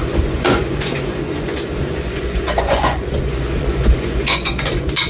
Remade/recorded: remade